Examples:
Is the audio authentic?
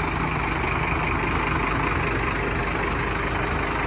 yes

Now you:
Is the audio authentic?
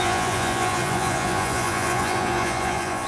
no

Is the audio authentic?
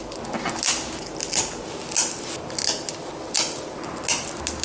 yes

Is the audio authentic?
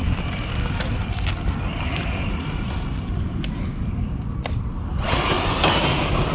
yes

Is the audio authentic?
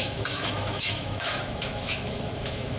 no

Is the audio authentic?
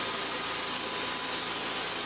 yes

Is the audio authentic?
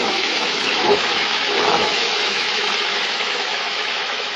no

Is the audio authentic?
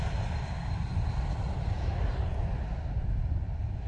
yes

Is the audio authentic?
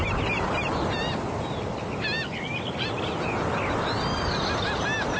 yes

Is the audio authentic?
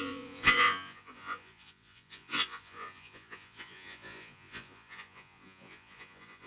no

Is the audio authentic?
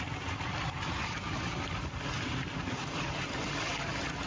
yes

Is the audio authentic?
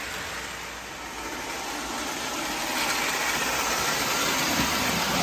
yes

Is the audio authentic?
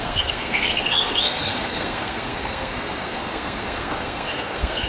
no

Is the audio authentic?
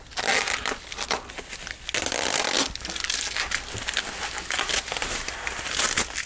yes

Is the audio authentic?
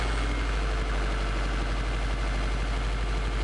yes